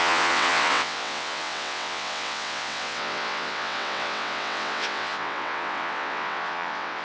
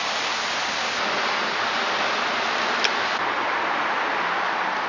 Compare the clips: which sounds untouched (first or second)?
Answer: second